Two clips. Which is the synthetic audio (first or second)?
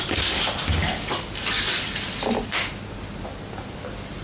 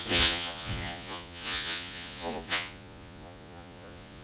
second